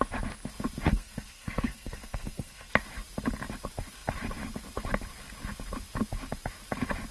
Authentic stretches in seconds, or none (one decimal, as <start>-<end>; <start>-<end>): 0.0-0.9; 2.7-7.1